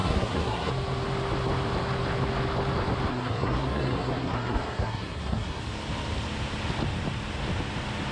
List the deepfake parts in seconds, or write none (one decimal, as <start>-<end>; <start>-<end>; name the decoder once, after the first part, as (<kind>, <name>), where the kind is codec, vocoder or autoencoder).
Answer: 0.0-0.7 (codec, SNAC); 3.1-5.6